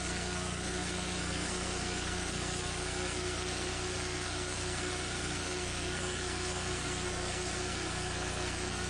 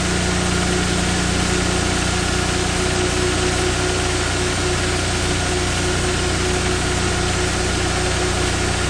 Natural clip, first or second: second